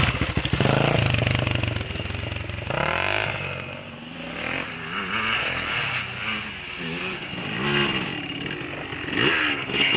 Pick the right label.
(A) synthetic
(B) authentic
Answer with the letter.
B